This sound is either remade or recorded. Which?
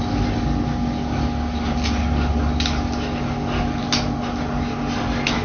recorded